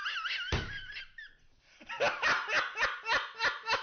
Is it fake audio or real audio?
real